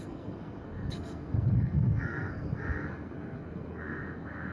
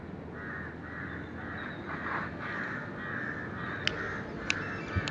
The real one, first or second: second